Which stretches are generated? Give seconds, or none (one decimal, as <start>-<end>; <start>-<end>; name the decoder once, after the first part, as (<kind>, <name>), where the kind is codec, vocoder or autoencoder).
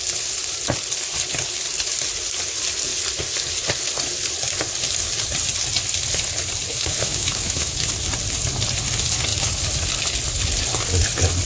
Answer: 6.7-7.9 (autoencoder, DAC-VAE)